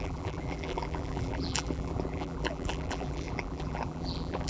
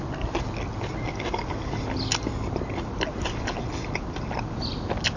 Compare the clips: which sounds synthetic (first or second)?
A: first